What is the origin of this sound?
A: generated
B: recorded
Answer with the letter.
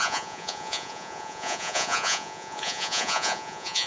A